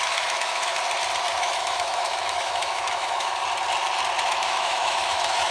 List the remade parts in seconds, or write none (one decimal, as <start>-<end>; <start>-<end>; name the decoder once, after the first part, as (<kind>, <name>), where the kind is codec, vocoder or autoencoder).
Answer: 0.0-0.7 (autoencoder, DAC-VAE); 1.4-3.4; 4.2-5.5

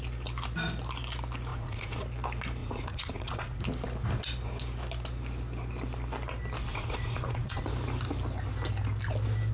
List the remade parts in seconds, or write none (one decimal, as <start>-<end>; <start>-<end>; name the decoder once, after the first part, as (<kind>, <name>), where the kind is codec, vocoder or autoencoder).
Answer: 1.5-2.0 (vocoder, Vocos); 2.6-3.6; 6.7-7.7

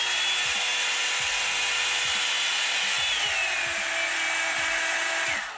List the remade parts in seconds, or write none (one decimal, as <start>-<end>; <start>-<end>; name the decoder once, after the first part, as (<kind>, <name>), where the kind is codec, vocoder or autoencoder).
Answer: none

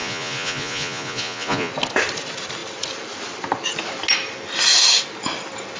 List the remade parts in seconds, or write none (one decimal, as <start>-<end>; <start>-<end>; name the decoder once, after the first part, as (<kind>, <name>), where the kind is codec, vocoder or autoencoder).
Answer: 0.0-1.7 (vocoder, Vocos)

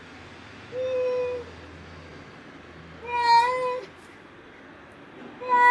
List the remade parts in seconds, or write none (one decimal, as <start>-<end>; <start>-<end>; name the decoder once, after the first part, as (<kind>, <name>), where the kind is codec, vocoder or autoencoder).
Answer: none